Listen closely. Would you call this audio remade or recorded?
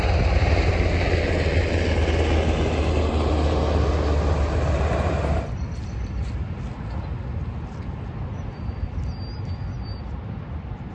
recorded